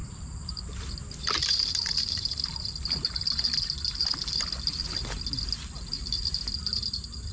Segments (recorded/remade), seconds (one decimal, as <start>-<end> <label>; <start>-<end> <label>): 0.0-2.5 remade; 2.5-7.3 recorded